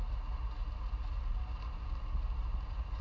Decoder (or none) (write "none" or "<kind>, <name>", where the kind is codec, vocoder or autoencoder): none